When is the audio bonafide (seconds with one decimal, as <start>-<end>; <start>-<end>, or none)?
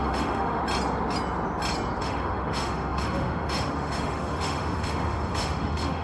0.6-2.0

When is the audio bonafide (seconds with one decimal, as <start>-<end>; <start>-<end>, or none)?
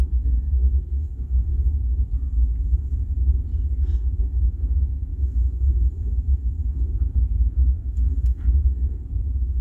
1.5-3.8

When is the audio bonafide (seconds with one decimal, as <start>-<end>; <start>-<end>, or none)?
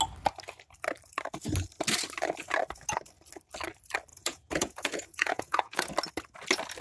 0.0-4.1; 5.9-6.8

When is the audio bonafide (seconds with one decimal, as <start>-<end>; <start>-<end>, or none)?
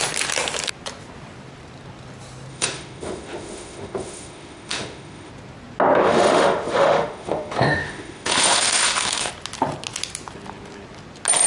0.0-2.5; 5.3-6.0; 9.3-11.5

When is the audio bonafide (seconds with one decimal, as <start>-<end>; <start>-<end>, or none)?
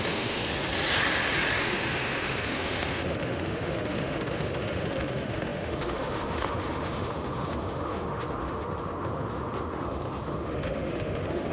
0.4-1.6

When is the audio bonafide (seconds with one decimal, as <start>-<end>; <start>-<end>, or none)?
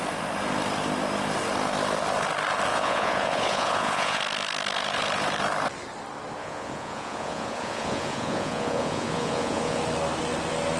0.0-2.7; 4.2-6.4; 9.8-10.8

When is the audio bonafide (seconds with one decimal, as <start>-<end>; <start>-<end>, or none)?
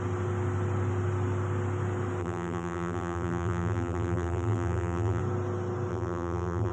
0.0-2.2; 5.2-5.9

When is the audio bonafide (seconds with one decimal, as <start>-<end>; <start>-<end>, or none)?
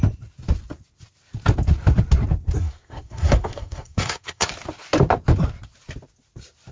0.0-2.6; 4.5-6.7